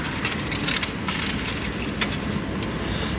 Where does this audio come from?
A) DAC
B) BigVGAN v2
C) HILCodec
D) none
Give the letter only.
D